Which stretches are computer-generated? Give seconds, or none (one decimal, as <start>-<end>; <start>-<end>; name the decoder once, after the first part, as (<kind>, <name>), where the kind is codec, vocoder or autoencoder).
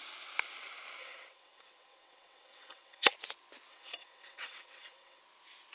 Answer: 1.0-3.1 (vocoder, WaveNeXt); 3.7-5.2